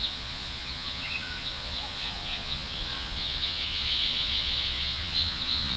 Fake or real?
fake